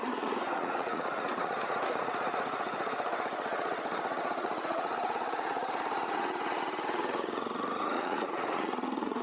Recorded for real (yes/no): no